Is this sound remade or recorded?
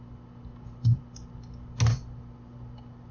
recorded